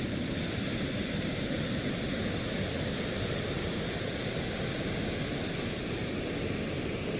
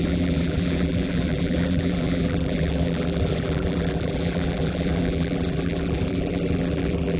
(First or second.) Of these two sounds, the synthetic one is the second